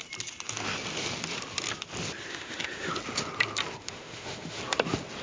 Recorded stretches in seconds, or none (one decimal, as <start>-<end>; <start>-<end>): 0.0-2.3; 2.9-3.8; 4.6-5.2